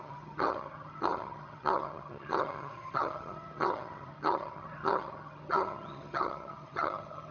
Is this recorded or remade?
remade